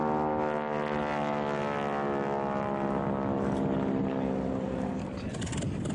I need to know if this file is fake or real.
real